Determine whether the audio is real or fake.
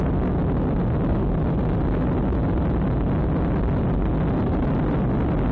real